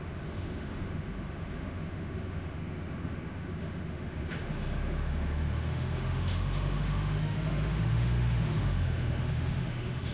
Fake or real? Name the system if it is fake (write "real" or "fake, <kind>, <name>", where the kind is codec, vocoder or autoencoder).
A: fake, autoencoder, DAC-VAE